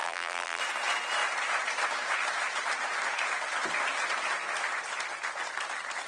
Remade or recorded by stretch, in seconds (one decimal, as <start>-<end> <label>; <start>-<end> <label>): 0.0-0.6 remade; 0.6-6.1 recorded